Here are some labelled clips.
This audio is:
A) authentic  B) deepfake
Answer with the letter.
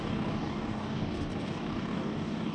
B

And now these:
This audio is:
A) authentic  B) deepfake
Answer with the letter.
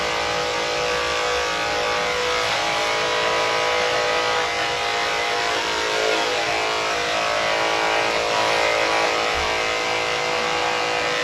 A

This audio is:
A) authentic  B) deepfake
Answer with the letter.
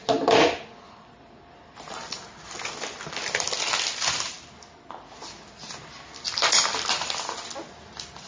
A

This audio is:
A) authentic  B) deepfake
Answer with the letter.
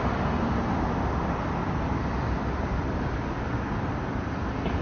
A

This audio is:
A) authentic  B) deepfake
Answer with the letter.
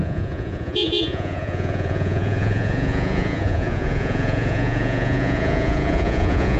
B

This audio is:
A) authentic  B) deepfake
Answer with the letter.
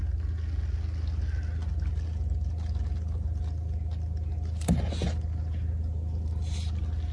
A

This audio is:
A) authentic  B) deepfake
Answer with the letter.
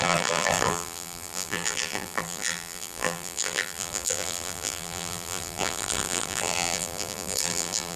B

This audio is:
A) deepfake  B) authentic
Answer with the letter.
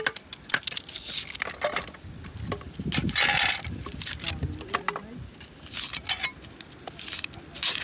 B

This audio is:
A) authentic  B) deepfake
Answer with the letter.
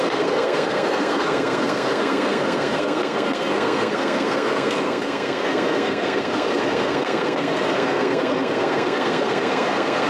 B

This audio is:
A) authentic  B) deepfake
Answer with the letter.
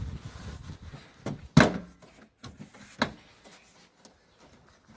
A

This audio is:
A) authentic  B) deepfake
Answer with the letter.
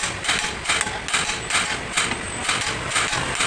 A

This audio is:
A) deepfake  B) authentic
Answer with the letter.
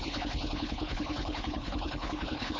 A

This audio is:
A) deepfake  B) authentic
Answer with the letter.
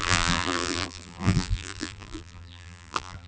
A